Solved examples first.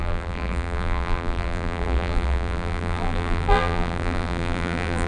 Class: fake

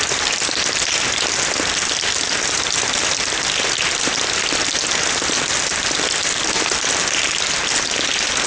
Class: real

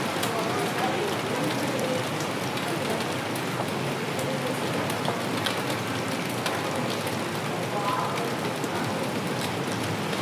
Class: real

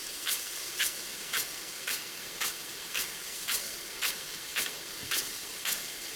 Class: fake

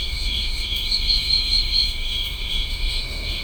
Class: fake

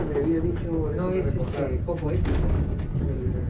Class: real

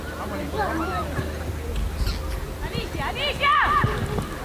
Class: real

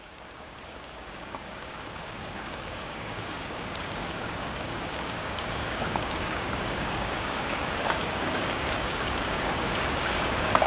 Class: fake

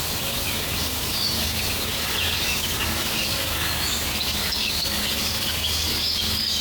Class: fake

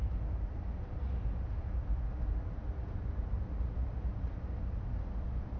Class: real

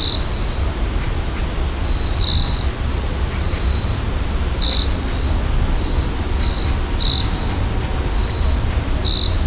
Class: real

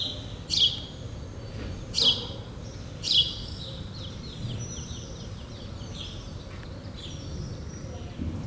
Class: real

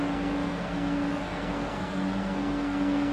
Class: fake